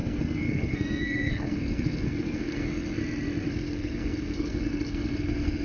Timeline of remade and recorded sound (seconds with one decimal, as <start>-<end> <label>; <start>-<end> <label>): 0.0-3.0 remade; 3.0-3.5 recorded; 3.5-5.6 remade